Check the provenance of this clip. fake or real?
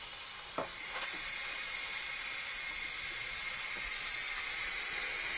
real